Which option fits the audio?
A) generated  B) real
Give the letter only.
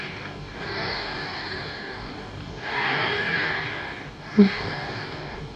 A